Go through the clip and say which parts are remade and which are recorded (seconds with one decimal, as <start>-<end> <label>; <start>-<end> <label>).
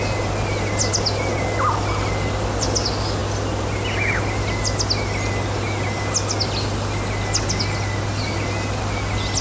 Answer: 0.0-9.4 recorded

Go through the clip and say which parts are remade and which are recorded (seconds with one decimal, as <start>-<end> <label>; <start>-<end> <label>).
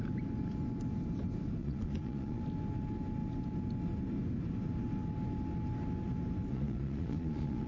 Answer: 0.0-1.6 recorded; 1.6-2.4 remade; 2.4-6.5 recorded; 6.5-7.7 remade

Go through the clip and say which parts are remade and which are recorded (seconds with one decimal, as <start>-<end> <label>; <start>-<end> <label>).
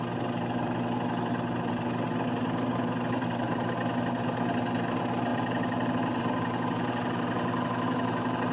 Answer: 0.0-8.5 recorded